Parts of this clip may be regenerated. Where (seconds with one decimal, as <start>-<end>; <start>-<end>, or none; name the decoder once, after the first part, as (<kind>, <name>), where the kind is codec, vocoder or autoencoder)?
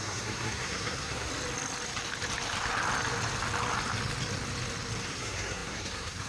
0.0-1.3 (codec, SNAC); 5.1-6.3